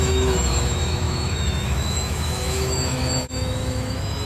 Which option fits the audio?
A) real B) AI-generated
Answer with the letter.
B